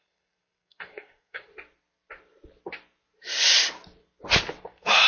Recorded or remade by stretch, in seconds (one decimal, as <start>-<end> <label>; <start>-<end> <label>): 0.0-1.5 remade; 1.5-4.6 recorded; 4.6-5.1 remade